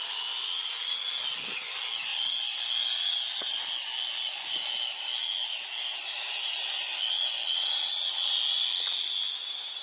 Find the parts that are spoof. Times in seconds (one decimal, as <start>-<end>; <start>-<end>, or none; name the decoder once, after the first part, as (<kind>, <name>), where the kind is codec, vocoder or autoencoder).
none